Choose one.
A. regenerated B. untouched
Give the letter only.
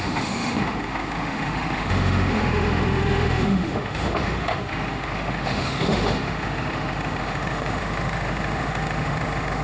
A